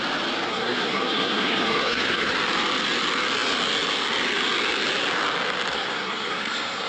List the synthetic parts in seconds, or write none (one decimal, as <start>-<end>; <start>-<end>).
0.5-2.3; 5.7-6.9